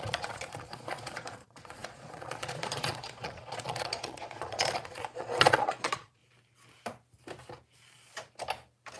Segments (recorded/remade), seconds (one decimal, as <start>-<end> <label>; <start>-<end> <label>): 0.0-6.2 remade; 6.2-9.0 recorded